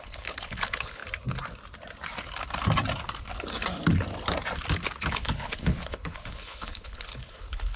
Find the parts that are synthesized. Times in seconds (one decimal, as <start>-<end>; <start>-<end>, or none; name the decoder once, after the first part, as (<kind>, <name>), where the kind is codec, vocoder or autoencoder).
0.0-1.0 (codec, HILCodec); 5.1-7.8